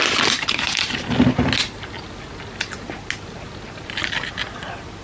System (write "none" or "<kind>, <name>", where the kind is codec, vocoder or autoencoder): none